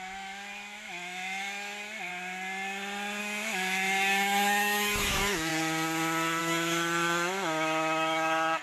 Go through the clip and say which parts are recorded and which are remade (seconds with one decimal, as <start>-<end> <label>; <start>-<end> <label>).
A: 0.0-2.1 remade; 2.1-3.2 recorded; 3.2-5.5 remade; 5.5-6.4 recorded; 6.4-8.6 remade

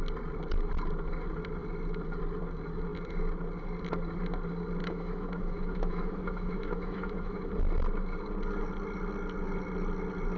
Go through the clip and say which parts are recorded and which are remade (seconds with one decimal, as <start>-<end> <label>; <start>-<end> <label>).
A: 0.0-4.8 recorded; 4.8-7.5 remade; 7.5-10.4 recorded